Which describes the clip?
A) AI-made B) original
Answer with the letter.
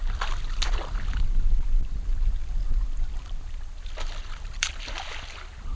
B